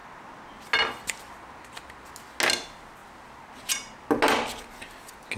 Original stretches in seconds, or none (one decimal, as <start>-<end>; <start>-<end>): 0.0-5.4